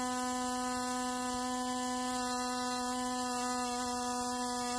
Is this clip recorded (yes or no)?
yes